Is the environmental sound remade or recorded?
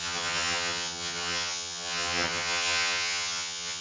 remade